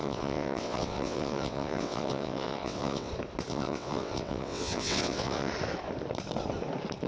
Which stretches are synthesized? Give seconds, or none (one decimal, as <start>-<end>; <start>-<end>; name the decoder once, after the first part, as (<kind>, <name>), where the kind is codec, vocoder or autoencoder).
0.0-3.1 (vocoder, WaveNeXt); 3.5-5.5